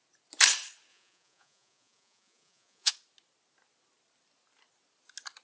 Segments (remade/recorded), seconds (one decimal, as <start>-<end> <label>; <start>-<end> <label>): 0.0-0.9 recorded; 0.9-2.9 remade; 2.9-5.4 recorded